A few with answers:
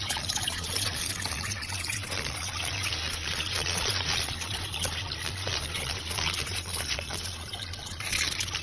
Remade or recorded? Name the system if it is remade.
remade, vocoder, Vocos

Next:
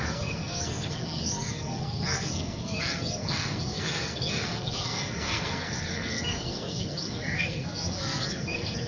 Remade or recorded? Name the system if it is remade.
remade, codec, SNAC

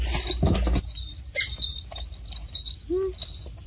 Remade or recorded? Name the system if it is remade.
recorded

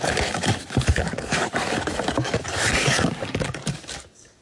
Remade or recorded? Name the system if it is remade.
remade, codec, DAC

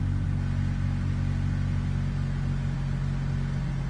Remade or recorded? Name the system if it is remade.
recorded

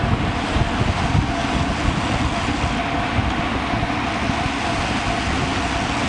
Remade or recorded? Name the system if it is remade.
recorded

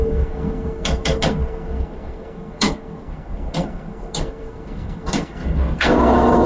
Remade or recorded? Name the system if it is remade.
remade, codec, SNAC